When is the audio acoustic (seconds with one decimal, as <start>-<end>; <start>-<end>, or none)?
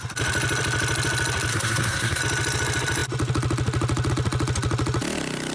0.0-1.5; 2.2-5.5